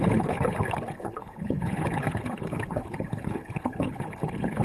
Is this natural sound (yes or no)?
no